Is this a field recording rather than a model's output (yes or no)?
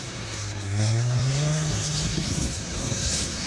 no